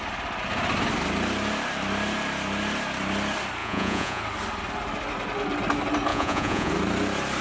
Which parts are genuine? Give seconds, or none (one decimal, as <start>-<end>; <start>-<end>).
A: 0.0-3.6; 4.2-6.1; 6.7-7.4